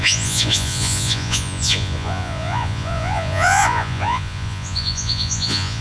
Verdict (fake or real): fake